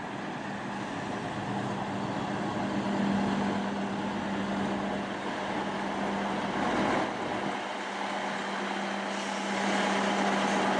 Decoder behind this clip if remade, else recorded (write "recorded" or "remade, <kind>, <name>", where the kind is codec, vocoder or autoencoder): recorded